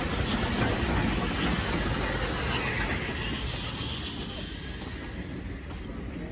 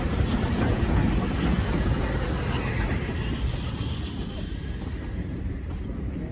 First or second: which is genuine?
first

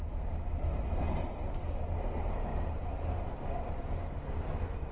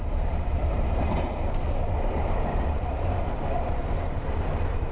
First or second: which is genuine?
first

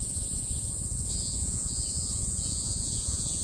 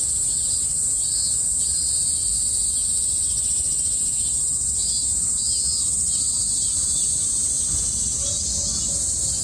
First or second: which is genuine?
second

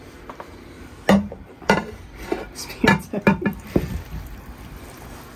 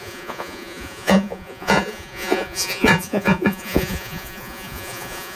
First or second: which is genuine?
first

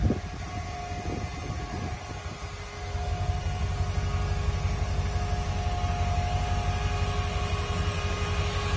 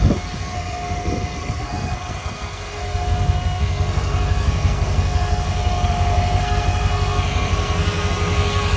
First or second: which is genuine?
first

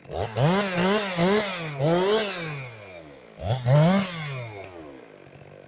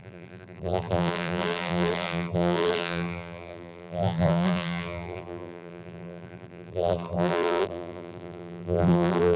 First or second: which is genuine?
first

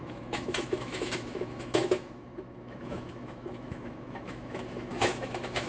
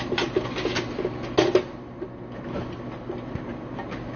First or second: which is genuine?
second